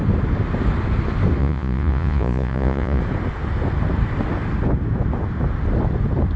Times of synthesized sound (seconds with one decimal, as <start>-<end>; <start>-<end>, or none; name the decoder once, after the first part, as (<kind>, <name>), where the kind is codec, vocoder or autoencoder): 1.4-3.0 (vocoder, Vocos)